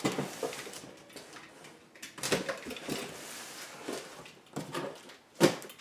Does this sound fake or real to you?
real